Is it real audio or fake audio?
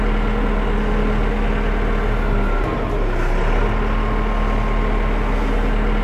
real